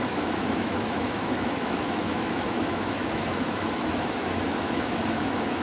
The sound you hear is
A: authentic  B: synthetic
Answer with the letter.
B